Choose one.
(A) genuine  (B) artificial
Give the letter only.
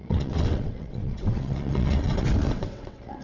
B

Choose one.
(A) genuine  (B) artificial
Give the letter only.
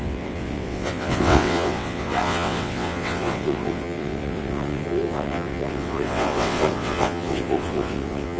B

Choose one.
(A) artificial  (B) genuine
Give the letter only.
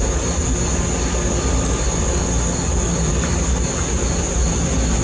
B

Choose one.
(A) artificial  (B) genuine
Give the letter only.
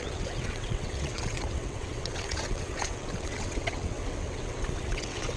A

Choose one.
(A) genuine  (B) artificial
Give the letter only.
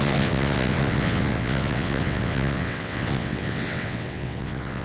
B